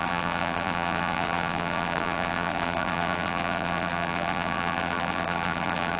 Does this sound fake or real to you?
fake